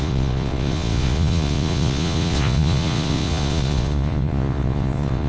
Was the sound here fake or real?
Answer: fake